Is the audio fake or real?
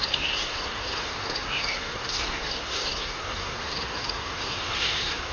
fake